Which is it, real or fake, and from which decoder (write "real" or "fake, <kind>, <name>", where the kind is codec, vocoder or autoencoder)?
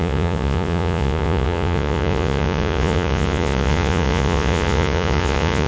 fake, vocoder, Vocos